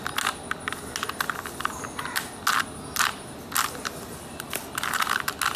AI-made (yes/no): no